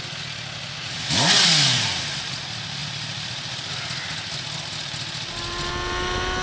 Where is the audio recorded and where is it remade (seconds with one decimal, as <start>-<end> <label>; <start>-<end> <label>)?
0.0-6.4 recorded